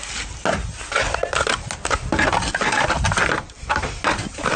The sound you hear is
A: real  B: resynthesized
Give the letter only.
A